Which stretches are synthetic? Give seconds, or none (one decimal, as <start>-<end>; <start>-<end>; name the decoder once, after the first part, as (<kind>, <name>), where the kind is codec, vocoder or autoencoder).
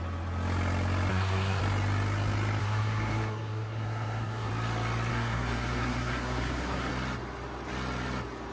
1.1-1.6 (codec, SNAC); 2.6-4.5; 5.1-6.9